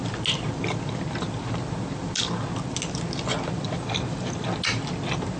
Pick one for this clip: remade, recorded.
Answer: recorded